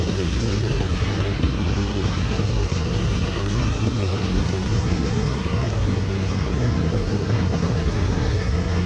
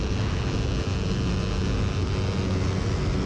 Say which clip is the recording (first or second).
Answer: second